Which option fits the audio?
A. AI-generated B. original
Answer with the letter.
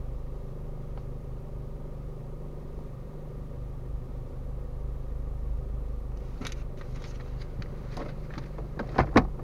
B